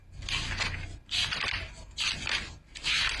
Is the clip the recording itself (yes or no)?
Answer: yes